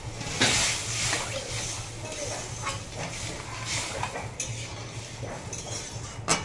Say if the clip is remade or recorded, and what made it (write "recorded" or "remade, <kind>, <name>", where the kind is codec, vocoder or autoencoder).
recorded